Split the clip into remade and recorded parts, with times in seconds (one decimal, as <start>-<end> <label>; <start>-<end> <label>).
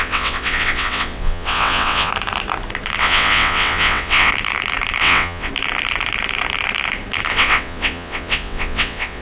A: 0.0-2.1 remade; 2.1-3.0 recorded; 3.0-4.3 remade; 4.3-5.0 recorded; 5.0-5.5 remade; 5.5-7.3 recorded; 7.3-9.2 remade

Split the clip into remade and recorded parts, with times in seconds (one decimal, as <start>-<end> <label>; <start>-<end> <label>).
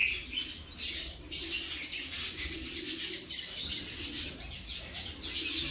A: 0.0-3.7 recorded; 3.7-4.3 remade; 4.3-5.7 recorded